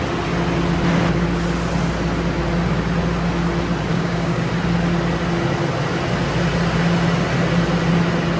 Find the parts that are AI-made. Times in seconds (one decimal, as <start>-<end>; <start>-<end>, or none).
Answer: 3.9-4.5